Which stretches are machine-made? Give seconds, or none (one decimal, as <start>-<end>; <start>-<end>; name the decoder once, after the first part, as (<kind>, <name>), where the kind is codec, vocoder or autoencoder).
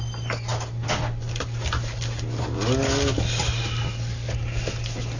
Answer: none